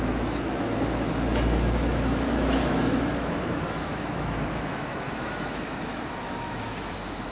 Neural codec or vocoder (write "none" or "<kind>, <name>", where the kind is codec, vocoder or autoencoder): autoencoder, DAC-VAE